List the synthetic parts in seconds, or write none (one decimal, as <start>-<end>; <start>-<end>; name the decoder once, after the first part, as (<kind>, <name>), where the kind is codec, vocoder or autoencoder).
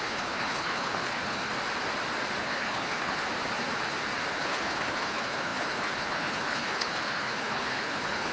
0.0-1.4 (codec, HILCodec); 2.4-3.2; 4.3-8.3